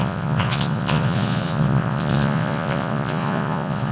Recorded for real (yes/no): no